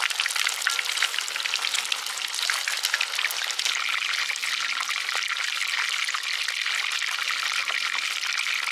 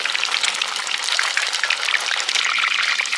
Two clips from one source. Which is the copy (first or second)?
second